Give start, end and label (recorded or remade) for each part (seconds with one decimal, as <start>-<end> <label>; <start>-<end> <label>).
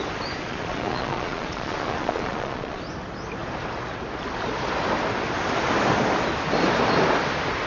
0.0-0.4 recorded; 0.4-2.8 remade; 2.8-7.7 recorded